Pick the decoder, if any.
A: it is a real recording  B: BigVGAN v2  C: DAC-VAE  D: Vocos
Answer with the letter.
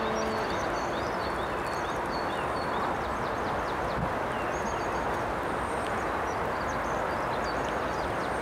A